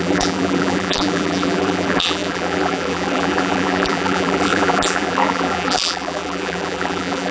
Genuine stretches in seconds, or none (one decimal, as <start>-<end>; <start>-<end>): none